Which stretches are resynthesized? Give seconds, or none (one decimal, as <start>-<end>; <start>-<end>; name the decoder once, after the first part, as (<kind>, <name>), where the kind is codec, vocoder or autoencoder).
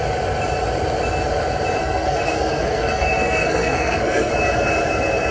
1.8-4.3 (codec, SNAC)